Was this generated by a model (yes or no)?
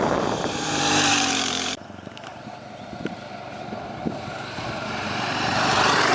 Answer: yes